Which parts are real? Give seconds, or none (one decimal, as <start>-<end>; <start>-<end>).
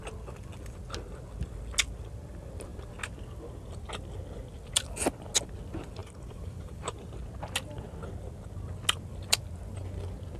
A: 0.0-6.0; 7.1-10.4